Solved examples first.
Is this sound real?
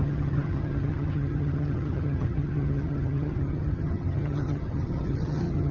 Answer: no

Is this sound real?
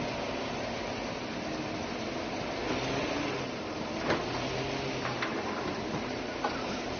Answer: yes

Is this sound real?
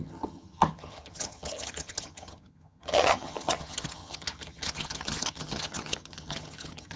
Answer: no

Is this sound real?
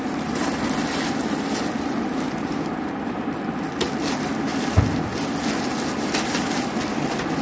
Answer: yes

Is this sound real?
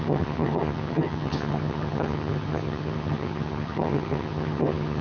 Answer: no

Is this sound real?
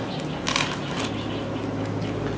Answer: yes